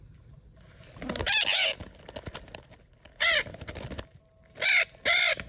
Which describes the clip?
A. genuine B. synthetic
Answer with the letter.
A